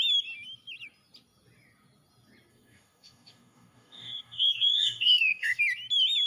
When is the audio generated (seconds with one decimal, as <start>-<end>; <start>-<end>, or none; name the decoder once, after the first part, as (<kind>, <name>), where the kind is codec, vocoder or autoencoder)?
2.5-5.6 (codec, DAC)